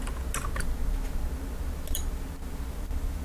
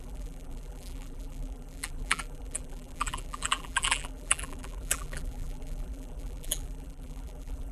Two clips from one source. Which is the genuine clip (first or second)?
first